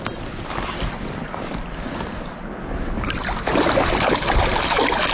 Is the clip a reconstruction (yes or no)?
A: no